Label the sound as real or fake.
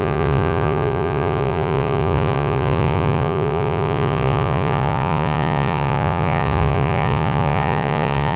fake